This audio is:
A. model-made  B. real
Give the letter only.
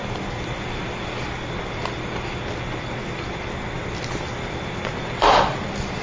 B